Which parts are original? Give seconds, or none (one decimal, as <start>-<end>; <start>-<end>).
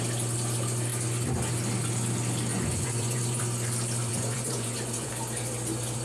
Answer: 0.0-2.5; 3.4-4.1; 5.1-6.0